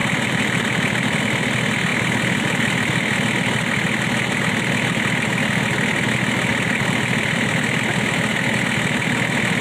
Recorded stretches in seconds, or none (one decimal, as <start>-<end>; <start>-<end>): 1.2-6.5; 7.8-9.6